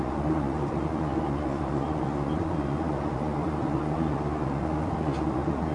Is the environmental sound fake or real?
fake